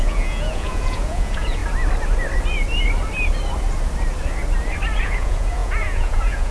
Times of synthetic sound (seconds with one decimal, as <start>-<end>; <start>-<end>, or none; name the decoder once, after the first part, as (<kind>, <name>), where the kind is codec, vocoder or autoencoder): 0.0-1.6 (vocoder, Vocos); 5.0-6.5